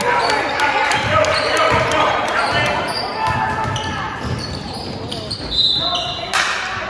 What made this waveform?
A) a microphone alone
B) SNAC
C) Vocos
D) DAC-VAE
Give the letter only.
A